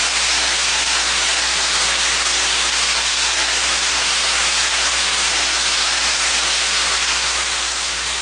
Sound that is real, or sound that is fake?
fake